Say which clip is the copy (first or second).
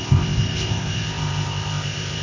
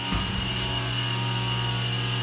first